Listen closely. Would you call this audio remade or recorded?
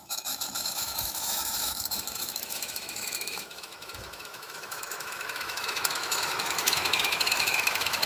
remade